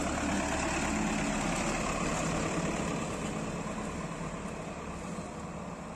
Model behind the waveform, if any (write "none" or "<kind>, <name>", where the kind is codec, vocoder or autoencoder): none